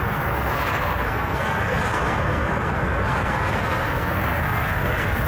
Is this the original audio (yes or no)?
no